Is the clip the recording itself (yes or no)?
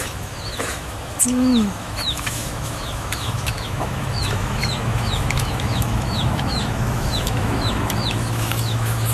no